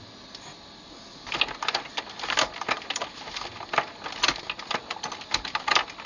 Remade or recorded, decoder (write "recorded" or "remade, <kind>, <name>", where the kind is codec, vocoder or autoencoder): recorded